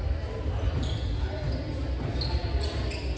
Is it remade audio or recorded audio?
recorded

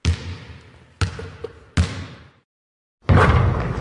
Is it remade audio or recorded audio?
recorded